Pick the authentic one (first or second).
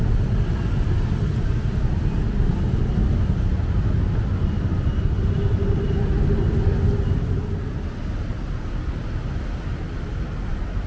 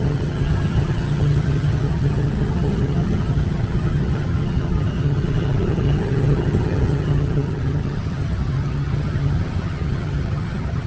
first